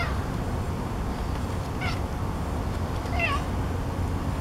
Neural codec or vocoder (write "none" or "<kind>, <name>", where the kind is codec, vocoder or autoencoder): none